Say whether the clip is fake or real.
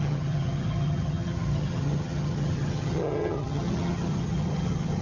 fake